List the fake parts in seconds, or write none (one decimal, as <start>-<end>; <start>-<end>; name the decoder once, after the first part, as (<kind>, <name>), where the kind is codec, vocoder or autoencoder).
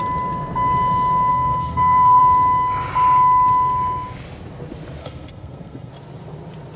1.3-2.2 (codec, SNAC); 5.0-5.9